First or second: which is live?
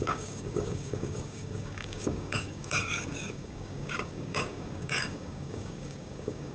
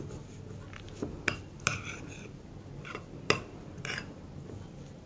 second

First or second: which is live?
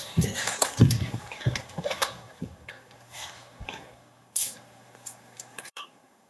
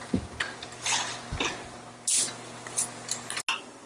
second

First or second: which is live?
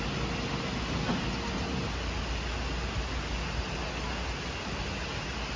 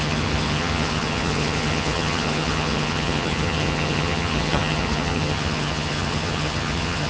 first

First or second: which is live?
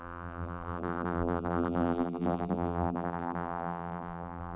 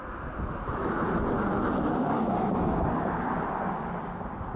second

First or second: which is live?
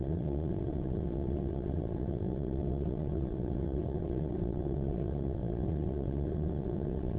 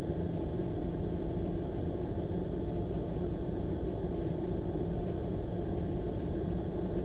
second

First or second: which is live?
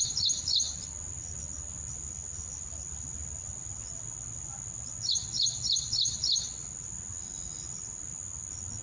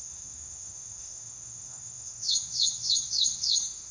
first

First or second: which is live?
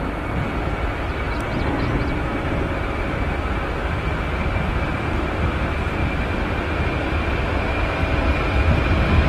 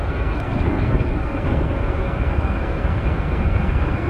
first